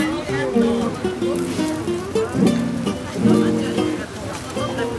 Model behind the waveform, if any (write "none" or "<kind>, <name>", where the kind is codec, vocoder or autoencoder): none